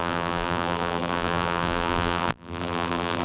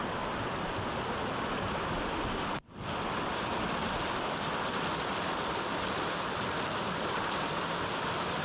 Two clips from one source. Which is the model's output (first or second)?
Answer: first